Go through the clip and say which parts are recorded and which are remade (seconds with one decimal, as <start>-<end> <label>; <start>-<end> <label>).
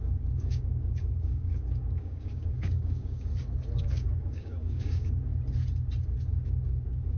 0.0-3.3 remade; 3.3-3.8 recorded; 3.8-5.3 remade; 5.3-6.3 recorded; 6.3-7.2 remade